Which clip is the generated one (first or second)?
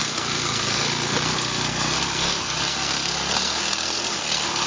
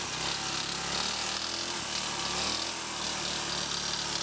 first